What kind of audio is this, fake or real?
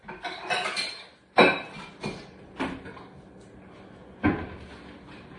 real